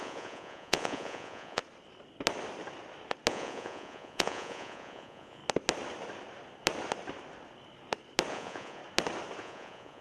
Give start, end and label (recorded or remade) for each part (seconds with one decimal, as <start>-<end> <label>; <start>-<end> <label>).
0.0-1.6 remade; 1.6-3.3 recorded; 3.3-5.4 remade; 5.4-8.3 recorded; 8.3-8.8 remade; 8.8-9.4 recorded; 9.4-10.0 remade